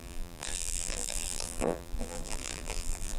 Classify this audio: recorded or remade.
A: remade